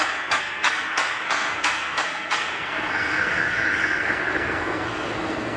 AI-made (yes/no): yes